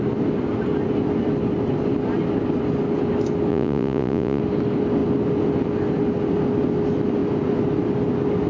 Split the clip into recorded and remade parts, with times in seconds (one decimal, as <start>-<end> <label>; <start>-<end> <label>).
0.0-3.5 recorded; 3.5-4.4 remade; 4.4-8.5 recorded